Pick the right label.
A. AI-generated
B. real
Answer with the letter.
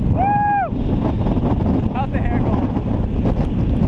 B